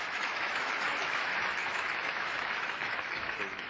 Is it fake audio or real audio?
fake